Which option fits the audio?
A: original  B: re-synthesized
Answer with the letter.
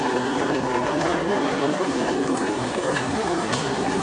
B